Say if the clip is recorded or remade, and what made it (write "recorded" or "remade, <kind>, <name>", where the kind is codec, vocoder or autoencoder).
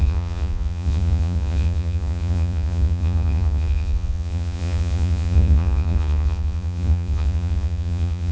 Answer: remade, vocoder, Vocos